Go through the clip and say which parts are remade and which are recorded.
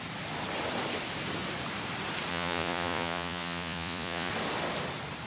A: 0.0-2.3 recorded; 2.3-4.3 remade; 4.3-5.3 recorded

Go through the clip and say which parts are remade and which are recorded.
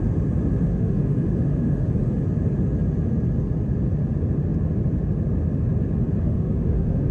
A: 0.0-0.7 recorded; 0.7-1.9 remade; 1.9-6.2 recorded; 6.2-7.1 remade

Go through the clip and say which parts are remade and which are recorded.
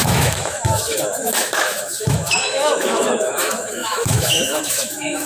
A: 0.0-5.3 remade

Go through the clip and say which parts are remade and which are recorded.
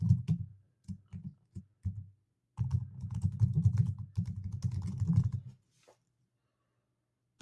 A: 0.0-7.4 recorded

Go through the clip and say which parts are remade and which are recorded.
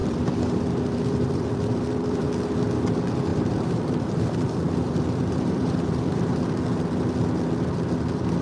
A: 0.0-2.3 remade; 2.3-3.3 recorded; 3.3-6.3 remade; 6.3-8.4 recorded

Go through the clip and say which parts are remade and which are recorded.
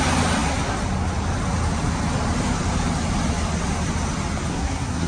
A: 0.0-4.5 recorded; 4.5-5.1 remade